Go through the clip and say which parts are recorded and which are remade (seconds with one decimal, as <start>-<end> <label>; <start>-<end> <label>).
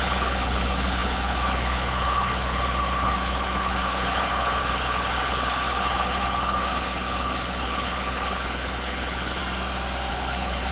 0.0-9.4 remade; 9.4-10.1 recorded; 10.1-10.7 remade